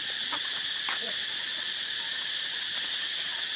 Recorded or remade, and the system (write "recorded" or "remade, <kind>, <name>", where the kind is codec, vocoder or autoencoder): remade, vocoder, Vocos